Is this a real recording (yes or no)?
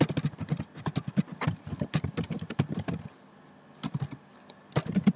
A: yes